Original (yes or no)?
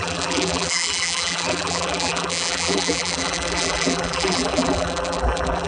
no